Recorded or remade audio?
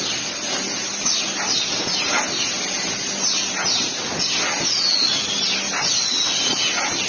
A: recorded